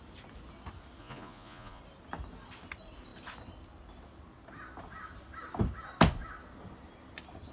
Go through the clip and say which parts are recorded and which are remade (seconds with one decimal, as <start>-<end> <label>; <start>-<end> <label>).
0.0-1.0 recorded; 1.0-1.8 remade; 1.8-7.5 recorded